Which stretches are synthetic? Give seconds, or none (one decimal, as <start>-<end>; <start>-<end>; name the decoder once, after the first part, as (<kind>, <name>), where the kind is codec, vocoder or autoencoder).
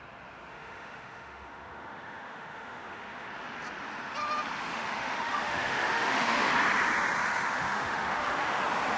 0.5-3.3 (autoencoder, DAC-VAE); 4.7-6.5; 7.2-8.6